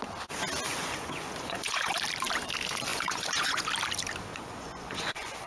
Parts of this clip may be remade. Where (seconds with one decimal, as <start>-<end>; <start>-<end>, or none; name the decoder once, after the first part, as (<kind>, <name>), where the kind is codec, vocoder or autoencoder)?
0.7-1.9 (vocoder, Vocos); 2.9-3.7; 4.3-5.5